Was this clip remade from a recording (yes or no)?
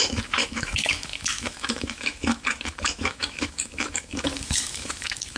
yes